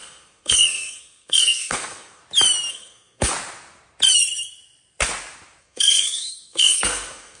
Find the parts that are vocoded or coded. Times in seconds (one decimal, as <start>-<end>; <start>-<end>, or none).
0.0-2.2; 2.7-3.3; 5.6-7.4